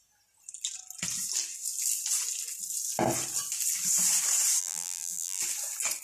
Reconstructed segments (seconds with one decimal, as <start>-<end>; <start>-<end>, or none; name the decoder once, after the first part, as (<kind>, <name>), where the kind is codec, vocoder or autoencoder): 4.6-5.4 (vocoder, BigVGAN v2)